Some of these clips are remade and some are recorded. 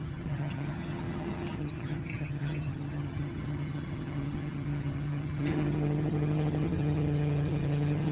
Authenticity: remade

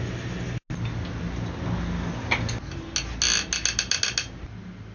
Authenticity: recorded